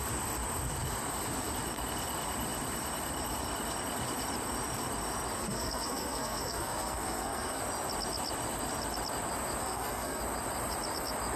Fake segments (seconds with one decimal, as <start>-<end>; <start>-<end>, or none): 5.4-7.6; 9.6-10.2